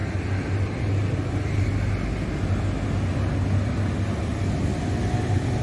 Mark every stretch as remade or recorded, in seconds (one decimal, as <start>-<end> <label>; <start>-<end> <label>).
0.0-5.6 recorded